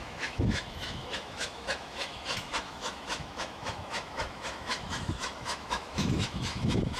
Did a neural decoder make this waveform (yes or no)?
yes